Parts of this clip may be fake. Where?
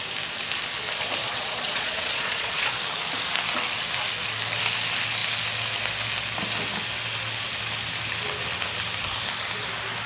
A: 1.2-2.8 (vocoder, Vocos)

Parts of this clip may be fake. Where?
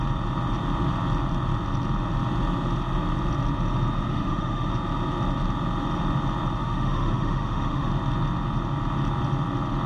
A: 4.1-4.7 (autoencoder, DAC-VAE); 6.6-7.9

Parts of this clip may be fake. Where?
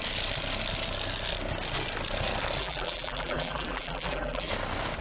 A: 2.6-4.5 (vocoder, BigVGAN v2)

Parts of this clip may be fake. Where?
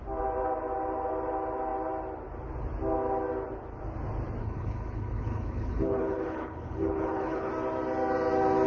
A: 4.4-7.5 (codec, HILCodec)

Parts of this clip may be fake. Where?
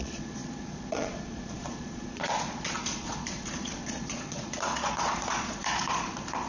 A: 0.0-6.5 (vocoder, Vocos)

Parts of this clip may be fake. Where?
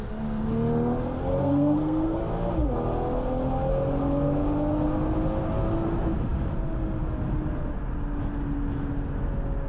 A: 1.4-2.2 (codec, SNAC)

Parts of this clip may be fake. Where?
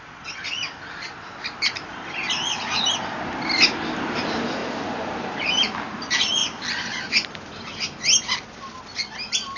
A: 2.5-3.1 (vocoder, BigVGAN v2); 4.6-6.0